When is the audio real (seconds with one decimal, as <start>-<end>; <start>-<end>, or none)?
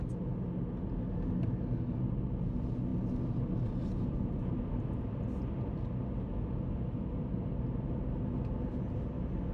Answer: 0.0-9.5